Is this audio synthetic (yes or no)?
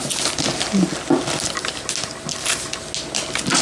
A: no